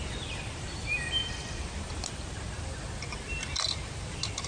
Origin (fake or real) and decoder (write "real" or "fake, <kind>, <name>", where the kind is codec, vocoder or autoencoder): real